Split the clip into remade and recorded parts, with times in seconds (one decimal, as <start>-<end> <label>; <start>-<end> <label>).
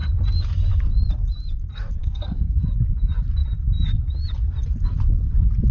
0.0-2.0 recorded; 2.0-2.6 remade; 2.6-5.7 recorded